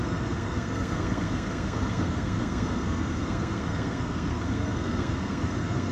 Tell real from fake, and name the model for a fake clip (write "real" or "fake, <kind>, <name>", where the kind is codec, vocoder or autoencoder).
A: fake, codec, SNAC